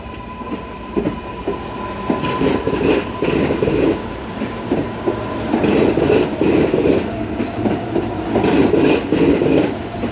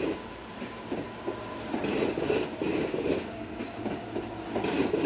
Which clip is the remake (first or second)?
first